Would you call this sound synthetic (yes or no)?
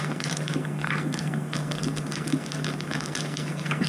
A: yes